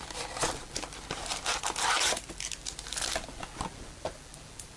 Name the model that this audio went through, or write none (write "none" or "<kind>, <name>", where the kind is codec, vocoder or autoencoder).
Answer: none